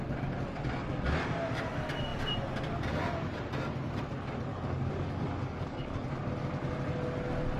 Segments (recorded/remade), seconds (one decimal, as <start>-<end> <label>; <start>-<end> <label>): 0.0-4.5 recorded; 4.5-6.0 remade; 6.0-7.6 recorded